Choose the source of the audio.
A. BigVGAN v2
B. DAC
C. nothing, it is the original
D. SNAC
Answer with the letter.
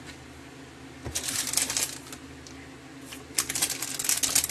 C